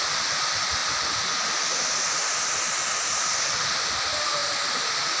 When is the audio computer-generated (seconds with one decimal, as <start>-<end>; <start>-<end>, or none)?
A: none